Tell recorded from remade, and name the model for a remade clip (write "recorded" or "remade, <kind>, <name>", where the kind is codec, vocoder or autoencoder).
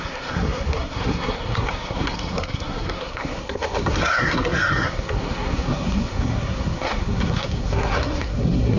remade, codec, SNAC